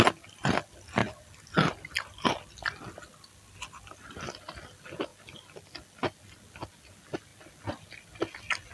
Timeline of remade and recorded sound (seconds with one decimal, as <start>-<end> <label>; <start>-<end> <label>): 0.0-8.7 recorded